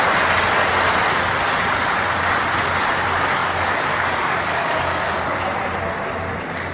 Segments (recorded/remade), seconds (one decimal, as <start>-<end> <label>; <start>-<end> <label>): 0.0-3.4 recorded; 3.4-5.4 remade; 5.4-6.7 recorded